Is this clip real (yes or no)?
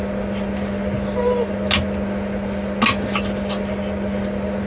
yes